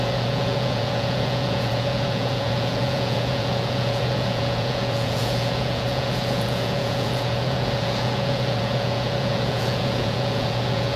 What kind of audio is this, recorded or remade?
remade